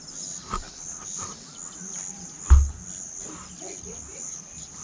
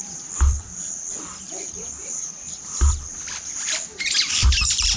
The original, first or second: first